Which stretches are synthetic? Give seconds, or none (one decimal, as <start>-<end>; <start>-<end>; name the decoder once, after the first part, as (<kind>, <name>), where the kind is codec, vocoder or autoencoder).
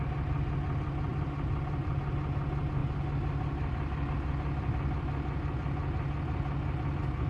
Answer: 1.1-2.0 (vocoder, BigVGAN v2)